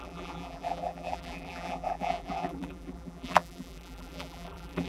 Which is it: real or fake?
fake